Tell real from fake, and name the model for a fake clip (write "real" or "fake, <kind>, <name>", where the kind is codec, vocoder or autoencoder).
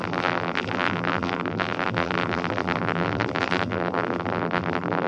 fake, vocoder, BigVGAN v2